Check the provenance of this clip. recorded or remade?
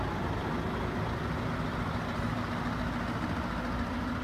recorded